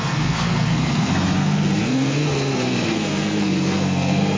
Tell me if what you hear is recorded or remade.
remade